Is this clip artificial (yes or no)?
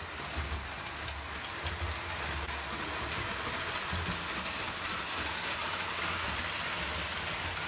no